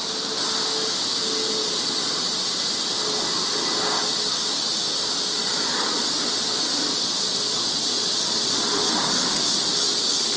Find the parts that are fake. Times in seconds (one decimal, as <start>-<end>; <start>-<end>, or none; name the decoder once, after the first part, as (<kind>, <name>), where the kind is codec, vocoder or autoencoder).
1.6-2.5 (vocoder, Vocos); 5.4-8.9